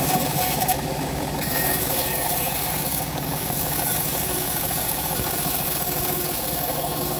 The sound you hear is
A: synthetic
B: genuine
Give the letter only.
A